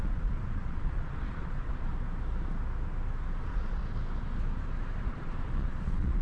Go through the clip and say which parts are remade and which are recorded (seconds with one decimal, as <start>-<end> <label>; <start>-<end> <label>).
0.0-1.9 remade; 1.9-3.4 recorded; 3.4-3.8 remade; 3.8-5.0 recorded; 5.0-6.2 remade